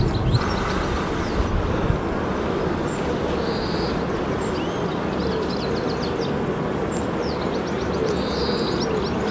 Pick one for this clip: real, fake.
real